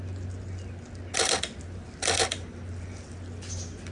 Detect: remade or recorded recorded